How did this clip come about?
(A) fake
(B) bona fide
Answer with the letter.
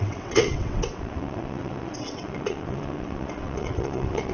A